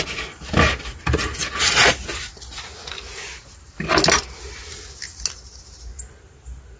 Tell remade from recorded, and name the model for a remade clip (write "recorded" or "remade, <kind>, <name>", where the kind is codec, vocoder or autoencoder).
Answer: recorded